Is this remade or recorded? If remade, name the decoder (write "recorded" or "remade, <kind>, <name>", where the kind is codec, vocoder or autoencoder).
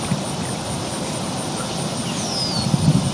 recorded